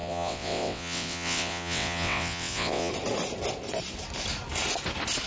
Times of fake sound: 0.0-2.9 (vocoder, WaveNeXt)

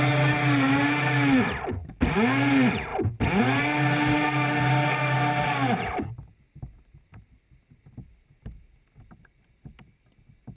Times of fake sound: none

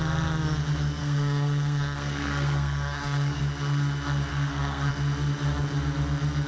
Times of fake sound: 1.0-3.4 (codec, SNAC); 4.3-4.9

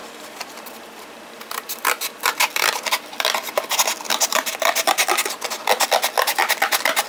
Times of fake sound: none

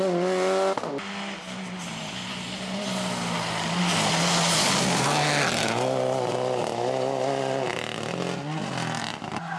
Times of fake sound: none